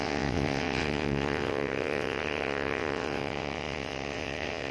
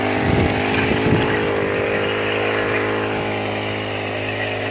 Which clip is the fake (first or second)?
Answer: first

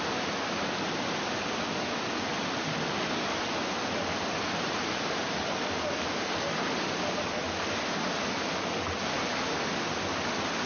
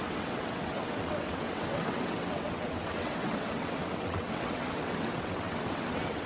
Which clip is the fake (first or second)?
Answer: second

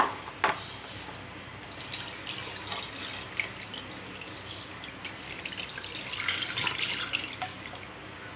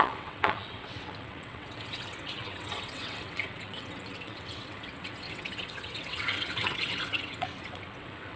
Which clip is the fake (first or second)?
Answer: second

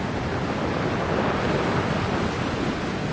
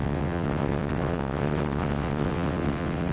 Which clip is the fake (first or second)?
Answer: second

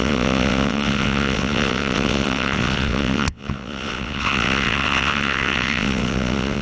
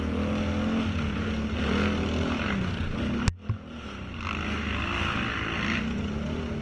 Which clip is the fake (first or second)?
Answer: first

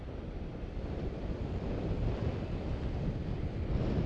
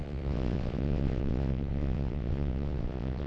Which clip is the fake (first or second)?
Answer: second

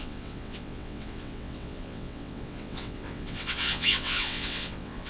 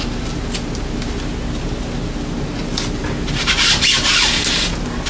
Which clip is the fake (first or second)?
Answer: first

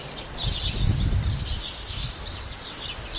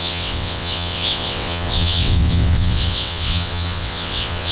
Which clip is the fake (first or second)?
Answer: second